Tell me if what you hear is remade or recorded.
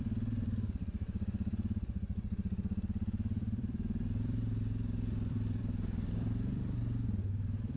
remade